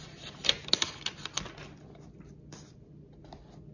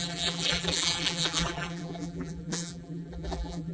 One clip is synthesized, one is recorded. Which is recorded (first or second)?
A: first